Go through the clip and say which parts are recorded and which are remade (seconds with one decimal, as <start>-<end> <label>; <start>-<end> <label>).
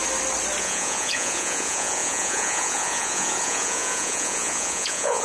0.0-0.6 recorded; 0.6-5.2 remade